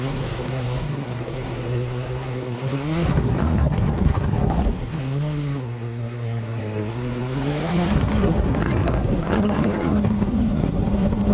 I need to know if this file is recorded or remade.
remade